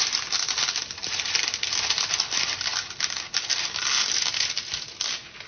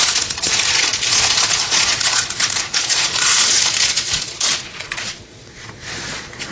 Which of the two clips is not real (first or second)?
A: second